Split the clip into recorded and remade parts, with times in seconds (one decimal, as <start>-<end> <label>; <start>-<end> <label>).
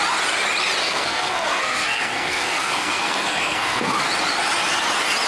0.0-0.8 recorded; 0.8-4.0 remade; 4.0-5.3 recorded